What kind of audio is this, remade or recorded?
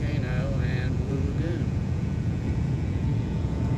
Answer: remade